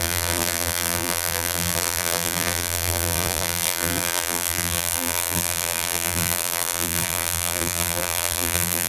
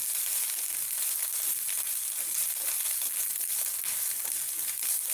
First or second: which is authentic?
second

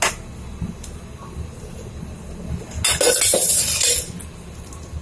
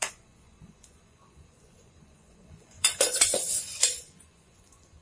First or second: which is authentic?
first